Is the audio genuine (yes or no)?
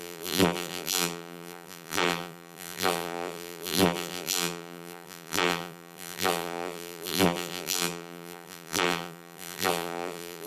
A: no